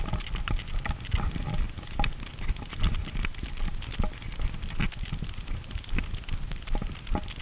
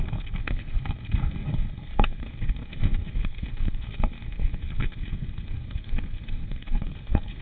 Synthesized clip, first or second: second